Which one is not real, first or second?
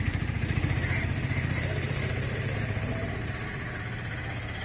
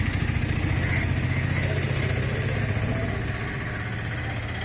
first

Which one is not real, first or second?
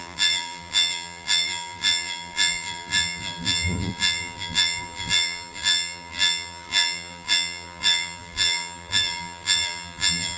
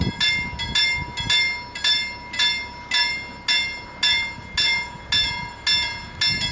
first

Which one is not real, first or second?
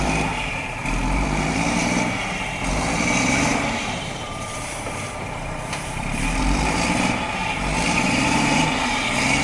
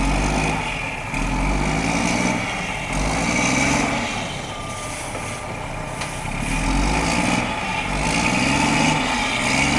first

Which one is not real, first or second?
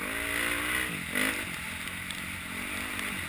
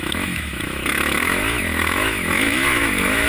second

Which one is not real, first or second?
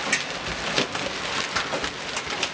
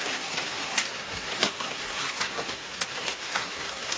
second